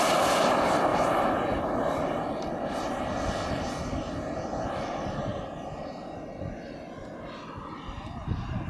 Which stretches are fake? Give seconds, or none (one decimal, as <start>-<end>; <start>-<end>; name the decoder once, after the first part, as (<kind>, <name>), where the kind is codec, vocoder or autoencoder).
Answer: none